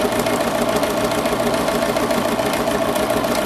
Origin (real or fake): real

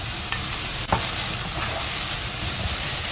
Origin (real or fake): real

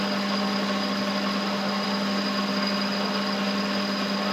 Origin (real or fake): real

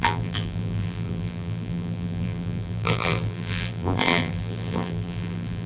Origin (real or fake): fake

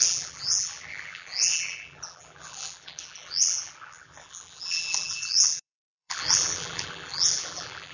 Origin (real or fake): fake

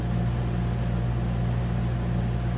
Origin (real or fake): real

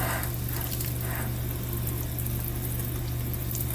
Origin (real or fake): real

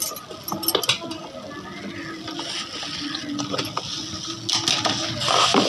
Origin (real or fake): real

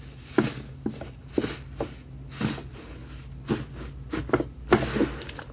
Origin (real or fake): real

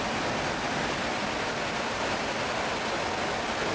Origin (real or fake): real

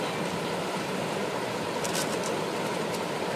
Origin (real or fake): real